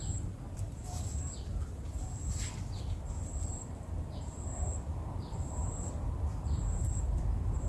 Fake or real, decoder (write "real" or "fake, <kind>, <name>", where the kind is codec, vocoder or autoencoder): fake, vocoder, BigVGAN v2